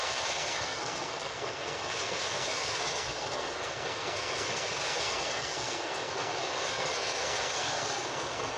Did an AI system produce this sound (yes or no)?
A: yes